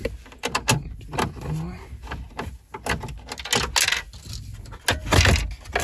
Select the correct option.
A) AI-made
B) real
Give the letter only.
B